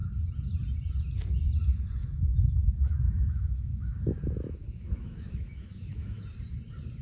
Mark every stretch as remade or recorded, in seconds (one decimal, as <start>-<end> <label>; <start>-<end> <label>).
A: 0.0-2.0 recorded; 2.0-6.2 remade; 6.2-7.0 recorded